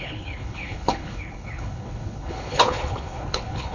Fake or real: fake